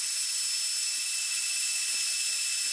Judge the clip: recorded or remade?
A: recorded